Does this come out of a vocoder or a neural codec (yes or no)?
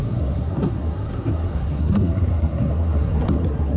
yes